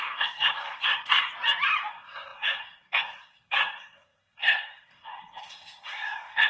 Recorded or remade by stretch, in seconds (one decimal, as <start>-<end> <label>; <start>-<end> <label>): 0.0-1.3 remade; 1.3-1.9 recorded; 1.9-6.5 remade